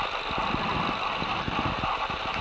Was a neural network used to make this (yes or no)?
no